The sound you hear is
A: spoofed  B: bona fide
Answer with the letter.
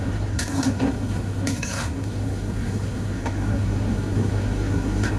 A